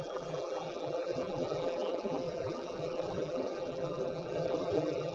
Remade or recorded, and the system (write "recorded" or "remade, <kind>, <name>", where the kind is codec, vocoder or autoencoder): remade, vocoder, BigVGAN v2